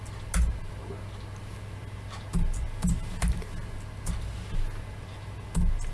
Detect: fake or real real